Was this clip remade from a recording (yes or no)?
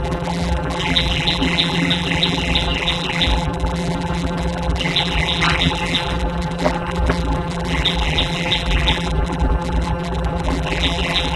yes